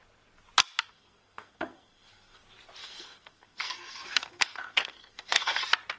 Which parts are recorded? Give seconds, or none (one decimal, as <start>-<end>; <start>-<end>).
0.0-0.9; 2.4-2.8; 5.6-6.0